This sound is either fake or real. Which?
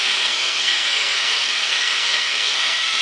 fake